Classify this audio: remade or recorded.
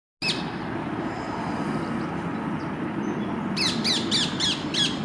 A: recorded